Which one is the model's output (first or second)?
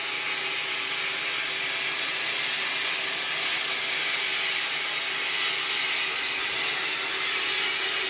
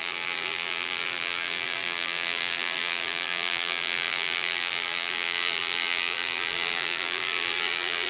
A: second